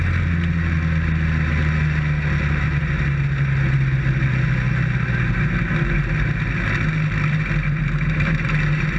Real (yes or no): yes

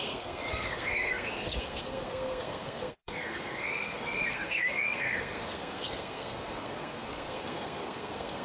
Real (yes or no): no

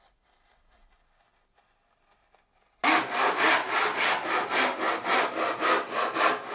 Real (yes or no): yes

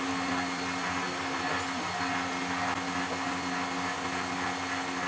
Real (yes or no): yes